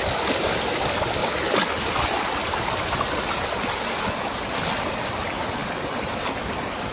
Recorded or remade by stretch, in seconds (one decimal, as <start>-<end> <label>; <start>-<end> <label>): 0.0-6.9 recorded